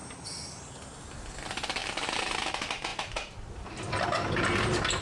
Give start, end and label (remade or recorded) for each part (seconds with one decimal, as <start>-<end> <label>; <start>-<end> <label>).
0.0-1.8 recorded; 1.8-2.5 remade; 2.5-2.9 recorded; 2.9-3.7 remade; 3.7-5.0 recorded